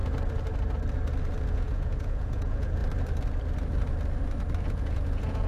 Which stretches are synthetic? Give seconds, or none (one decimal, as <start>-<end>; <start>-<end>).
1.5-2.8; 4.6-5.5